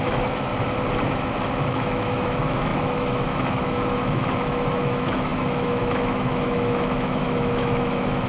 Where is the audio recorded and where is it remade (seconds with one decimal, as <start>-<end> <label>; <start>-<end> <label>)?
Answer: 0.0-0.5 remade; 0.5-1.6 recorded; 1.6-8.3 remade